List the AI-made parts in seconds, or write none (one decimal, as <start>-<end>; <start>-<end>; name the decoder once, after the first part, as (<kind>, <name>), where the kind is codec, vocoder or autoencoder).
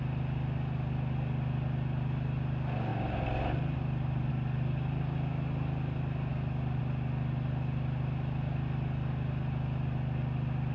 none